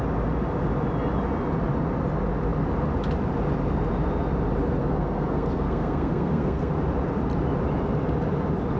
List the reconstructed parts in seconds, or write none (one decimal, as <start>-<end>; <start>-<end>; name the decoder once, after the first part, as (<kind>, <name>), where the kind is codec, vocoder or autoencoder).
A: 4.8-6.7 (codec, SNAC)